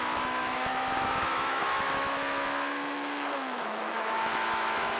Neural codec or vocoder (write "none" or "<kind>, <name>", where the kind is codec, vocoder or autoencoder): autoencoder, DAC-VAE